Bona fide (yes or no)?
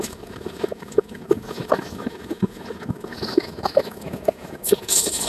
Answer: no